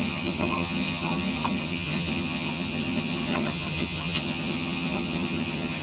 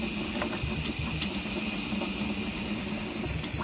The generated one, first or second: first